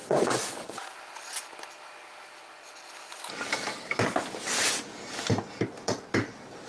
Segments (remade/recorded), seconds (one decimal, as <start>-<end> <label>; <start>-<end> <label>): 0.0-0.9 remade; 0.9-6.7 recorded